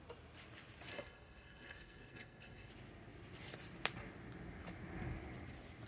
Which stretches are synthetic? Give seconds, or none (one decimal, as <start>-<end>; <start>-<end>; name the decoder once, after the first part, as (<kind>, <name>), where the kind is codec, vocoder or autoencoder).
0.9-2.7 (codec, SNAC)